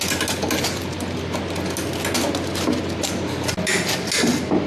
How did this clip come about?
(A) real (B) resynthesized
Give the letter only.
A